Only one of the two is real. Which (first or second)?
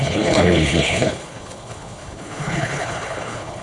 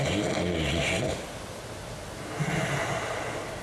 second